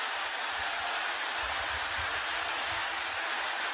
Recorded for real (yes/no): yes